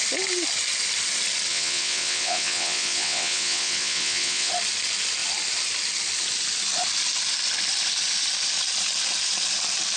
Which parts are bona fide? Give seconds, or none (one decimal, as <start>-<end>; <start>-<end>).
0.0-1.5; 4.5-10.0